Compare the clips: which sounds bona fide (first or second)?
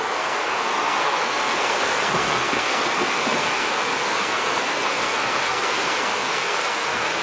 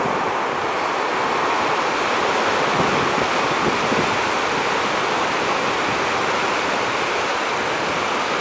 second